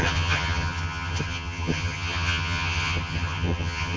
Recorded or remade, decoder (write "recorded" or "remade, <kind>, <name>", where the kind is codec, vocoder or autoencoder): remade, vocoder, HiFi-GAN